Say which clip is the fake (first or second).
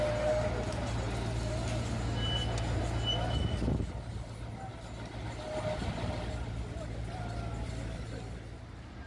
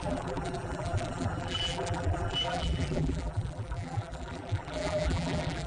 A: second